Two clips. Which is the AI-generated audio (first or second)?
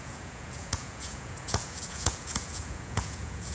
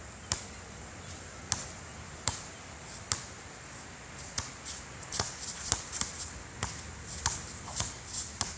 first